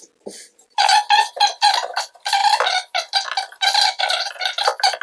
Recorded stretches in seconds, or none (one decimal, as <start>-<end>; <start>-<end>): none